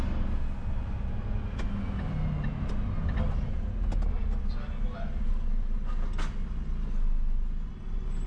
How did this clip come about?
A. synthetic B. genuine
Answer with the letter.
B